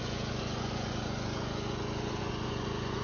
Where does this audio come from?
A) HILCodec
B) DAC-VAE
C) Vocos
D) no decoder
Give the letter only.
C